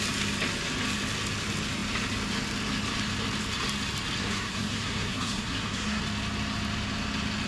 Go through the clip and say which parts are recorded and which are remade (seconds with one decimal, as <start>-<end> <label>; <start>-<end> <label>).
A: 0.0-4.2 recorded; 4.2-6.0 remade; 6.0-7.5 recorded